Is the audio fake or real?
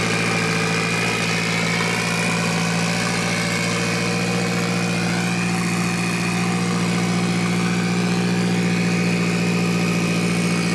real